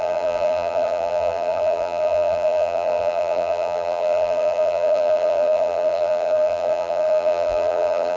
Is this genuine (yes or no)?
no